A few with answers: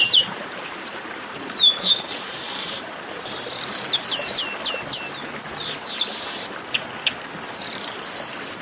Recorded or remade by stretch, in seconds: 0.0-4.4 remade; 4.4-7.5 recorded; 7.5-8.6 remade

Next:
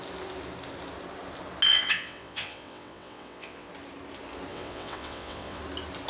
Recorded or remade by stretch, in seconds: 0.0-1.7 recorded; 1.7-3.7 remade; 3.7-4.5 recorded; 4.5-5.6 remade; 5.6-6.1 recorded

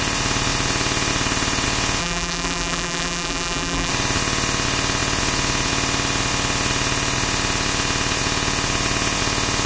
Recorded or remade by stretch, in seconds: 0.0-2.0 recorded; 2.0-3.9 remade; 3.9-9.7 recorded

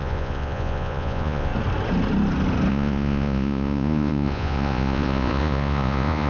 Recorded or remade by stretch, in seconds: 0.0-1.5 remade; 1.5-2.7 recorded; 2.7-6.3 remade